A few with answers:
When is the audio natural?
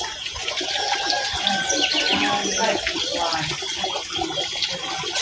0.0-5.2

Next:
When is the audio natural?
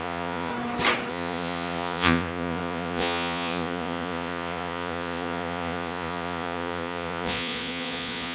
0.5-1.1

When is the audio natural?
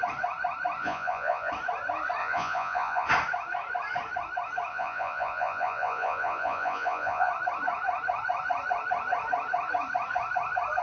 0.0-0.8; 1.5-2.2; 3.1-4.7; 7.3-10.8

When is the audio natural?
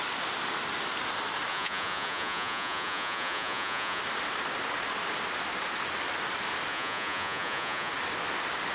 0.0-1.5; 4.0-6.7; 7.9-8.7